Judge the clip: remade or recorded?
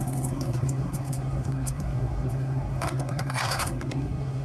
remade